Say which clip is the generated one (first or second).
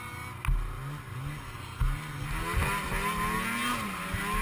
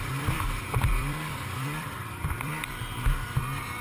second